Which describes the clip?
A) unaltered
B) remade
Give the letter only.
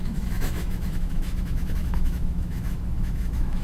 B